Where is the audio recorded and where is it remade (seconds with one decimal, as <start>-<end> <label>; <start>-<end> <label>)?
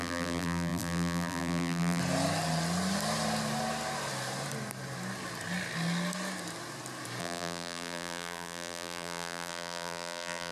0.0-2.0 remade; 2.0-7.2 recorded; 7.2-10.5 remade